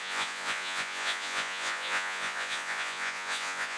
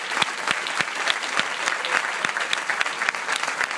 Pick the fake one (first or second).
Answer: first